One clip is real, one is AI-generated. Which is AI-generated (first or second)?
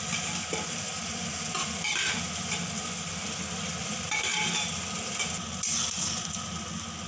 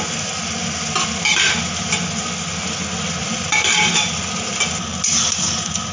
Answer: first